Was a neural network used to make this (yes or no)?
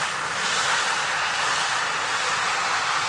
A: no